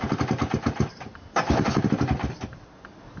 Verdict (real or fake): real